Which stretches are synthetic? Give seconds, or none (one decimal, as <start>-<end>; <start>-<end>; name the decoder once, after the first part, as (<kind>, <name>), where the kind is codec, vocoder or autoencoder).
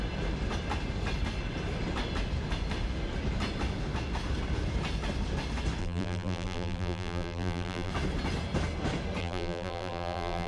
5.8-7.9 (vocoder, BigVGAN v2); 9.2-10.5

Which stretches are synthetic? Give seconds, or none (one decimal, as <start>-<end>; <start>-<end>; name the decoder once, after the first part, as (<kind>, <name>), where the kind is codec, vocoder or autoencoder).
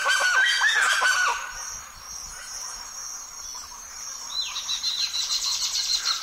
none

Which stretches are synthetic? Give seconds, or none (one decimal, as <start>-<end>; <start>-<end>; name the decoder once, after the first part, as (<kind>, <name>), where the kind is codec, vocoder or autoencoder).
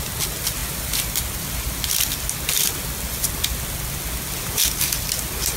none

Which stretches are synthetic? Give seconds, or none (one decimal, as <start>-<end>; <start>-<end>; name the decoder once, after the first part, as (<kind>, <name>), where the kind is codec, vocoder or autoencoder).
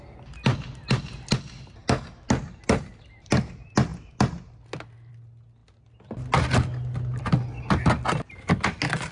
none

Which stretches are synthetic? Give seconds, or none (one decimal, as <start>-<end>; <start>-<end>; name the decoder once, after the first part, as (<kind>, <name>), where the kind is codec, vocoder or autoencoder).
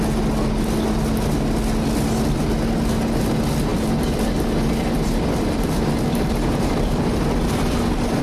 3.7-8.2 (vocoder, BigVGAN v2)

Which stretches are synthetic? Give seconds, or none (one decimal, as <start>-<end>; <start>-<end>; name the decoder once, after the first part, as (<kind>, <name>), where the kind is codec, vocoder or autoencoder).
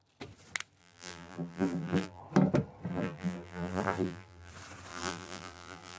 0.8-2.2 (vocoder, BigVGAN v2); 2.9-4.5; 4.9-6.0